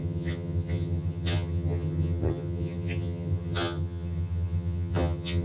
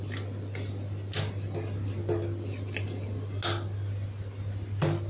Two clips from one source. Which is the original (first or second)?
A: second